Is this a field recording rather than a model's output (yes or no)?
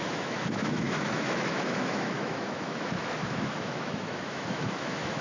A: no